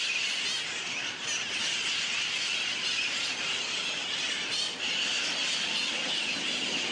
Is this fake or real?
real